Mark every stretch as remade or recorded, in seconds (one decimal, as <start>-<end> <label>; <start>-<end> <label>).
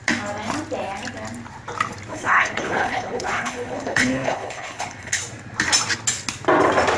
0.0-2.1 recorded; 2.1-5.2 remade; 5.2-7.0 recorded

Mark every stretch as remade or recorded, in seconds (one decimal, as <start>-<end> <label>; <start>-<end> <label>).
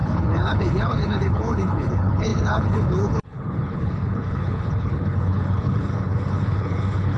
0.0-7.2 remade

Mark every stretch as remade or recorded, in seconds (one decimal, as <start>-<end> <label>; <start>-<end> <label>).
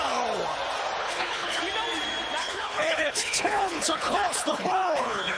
0.0-1.0 recorded; 1.0-1.6 remade; 1.6-2.4 recorded; 2.4-5.4 remade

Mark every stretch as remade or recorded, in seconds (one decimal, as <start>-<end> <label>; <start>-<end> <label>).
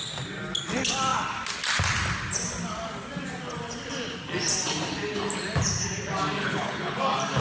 0.0-6.4 recorded; 6.4-7.0 remade; 7.0-7.4 recorded